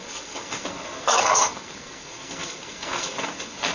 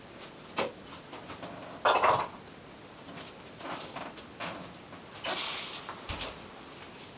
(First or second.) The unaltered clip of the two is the second